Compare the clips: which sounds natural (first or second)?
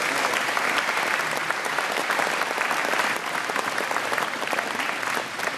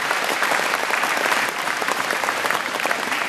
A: first